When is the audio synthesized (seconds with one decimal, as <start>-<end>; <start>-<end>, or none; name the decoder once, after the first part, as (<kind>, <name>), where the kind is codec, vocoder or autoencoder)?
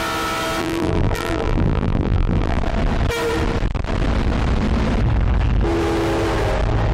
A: 0.6-2.6 (vocoder, BigVGAN v2)